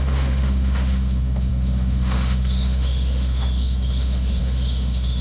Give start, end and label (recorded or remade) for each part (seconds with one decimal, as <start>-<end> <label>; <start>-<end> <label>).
0.0-5.2 remade